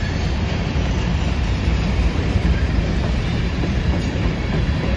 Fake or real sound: fake